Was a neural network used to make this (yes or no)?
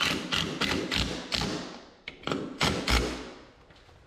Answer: no